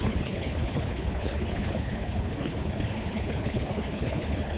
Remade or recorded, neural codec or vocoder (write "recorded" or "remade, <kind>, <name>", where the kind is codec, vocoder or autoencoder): remade, codec, HILCodec